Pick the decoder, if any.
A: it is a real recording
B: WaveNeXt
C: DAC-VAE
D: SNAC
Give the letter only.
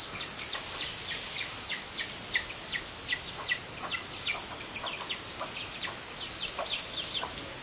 A